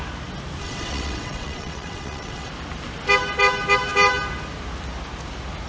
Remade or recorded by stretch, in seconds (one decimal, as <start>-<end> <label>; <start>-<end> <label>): 0.0-0.6 recorded; 0.6-2.5 remade; 2.5-5.7 recorded

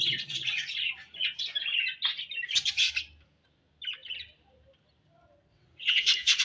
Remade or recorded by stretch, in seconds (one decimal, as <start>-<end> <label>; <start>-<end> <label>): 0.0-5.5 recorded; 5.5-6.4 remade

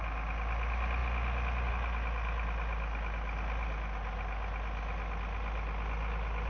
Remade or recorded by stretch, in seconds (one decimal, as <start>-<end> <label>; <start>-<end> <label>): 0.0-6.5 recorded

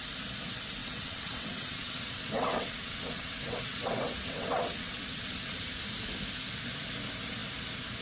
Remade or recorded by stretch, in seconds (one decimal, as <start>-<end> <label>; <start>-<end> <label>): 0.0-0.8 recorded; 0.8-5.6 remade; 5.6-8.0 recorded

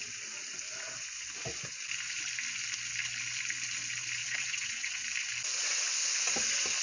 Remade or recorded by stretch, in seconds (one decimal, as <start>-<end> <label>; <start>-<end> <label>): 0.0-4.2 recorded; 4.2-5.0 remade; 5.0-6.8 recorded

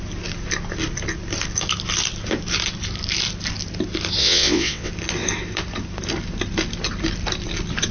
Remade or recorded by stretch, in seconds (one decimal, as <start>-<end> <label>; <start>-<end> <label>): 0.0-4.2 recorded; 4.2-4.9 remade; 4.9-7.9 recorded

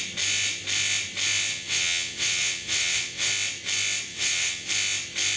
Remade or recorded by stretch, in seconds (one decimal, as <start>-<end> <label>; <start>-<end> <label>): 0.0-1.5 recorded; 1.5-3.3 remade; 3.3-4.1 recorded; 4.1-4.7 remade; 4.7-5.4 recorded

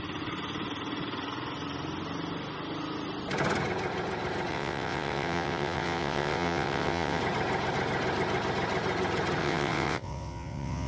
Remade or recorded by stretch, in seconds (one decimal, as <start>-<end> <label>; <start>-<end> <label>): 0.0-4.5 recorded; 4.5-7.2 remade; 7.2-9.4 recorded; 9.4-10.9 remade